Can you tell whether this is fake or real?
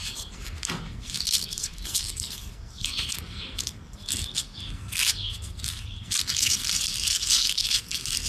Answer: fake